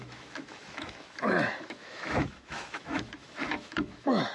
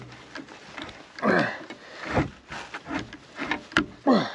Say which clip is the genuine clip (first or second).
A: second